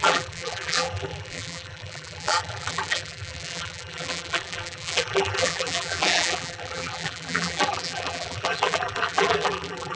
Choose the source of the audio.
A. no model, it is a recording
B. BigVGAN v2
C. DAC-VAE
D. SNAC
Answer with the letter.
B